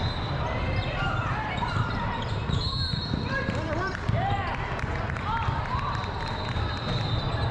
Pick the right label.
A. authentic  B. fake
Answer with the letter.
B